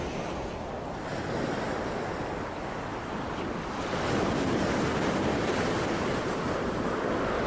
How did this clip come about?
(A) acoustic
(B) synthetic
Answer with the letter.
A